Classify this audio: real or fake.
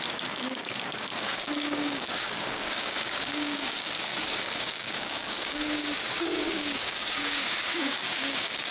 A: fake